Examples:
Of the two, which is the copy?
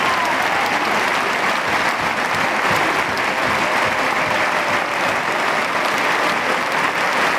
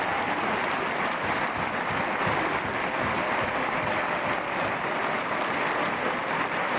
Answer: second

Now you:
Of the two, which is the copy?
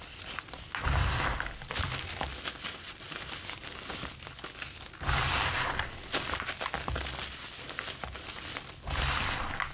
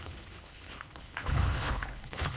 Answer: second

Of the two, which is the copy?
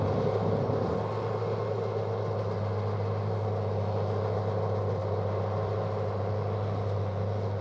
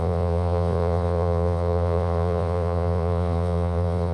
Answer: second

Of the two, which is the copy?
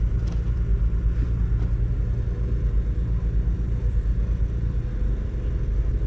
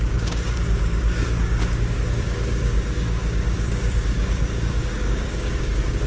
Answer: second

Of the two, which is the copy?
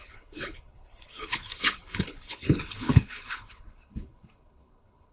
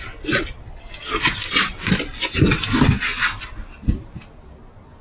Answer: first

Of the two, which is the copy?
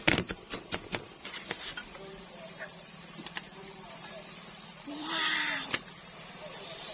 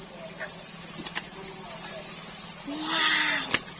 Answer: first